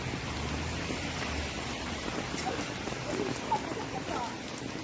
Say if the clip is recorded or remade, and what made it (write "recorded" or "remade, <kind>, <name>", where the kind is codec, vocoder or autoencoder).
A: recorded